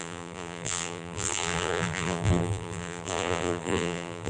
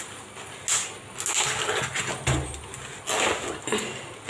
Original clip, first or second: second